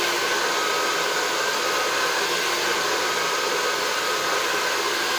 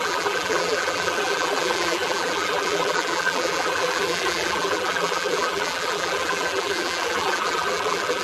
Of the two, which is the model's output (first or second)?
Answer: second